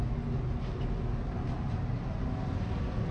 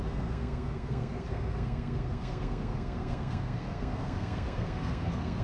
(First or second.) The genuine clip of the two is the first